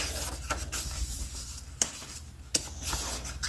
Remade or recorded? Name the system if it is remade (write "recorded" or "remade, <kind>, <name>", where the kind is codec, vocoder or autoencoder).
recorded